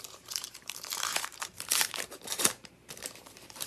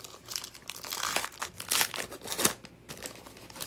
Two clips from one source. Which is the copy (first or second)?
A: first